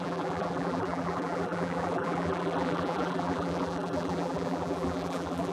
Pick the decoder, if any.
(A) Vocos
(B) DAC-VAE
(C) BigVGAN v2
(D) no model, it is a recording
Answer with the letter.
C